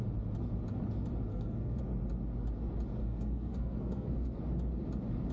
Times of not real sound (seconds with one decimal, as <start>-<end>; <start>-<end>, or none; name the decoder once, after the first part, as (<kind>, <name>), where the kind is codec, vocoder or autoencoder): 1.3-1.8 (codec, SNAC); 3.0-4.4